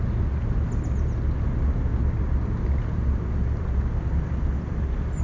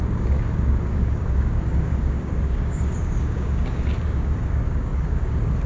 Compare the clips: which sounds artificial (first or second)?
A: second